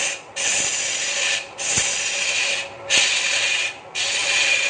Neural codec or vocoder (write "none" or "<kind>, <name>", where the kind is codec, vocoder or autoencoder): none